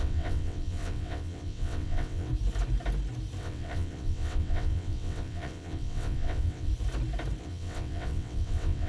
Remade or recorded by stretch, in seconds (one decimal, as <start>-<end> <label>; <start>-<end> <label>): 0.0-2.3 remade; 2.3-3.4 recorded; 3.4-6.7 remade; 6.7-7.4 recorded; 7.4-8.9 remade